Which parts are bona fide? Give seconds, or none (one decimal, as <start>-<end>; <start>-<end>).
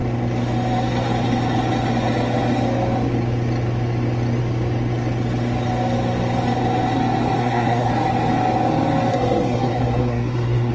0.0-7.4; 7.9-9.1